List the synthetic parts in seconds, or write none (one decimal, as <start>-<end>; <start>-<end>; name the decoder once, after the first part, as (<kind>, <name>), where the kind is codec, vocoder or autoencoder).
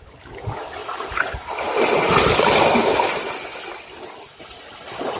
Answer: 0.0-2.8 (vocoder, BigVGAN v2); 3.8-4.3